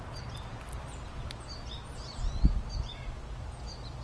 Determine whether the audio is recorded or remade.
recorded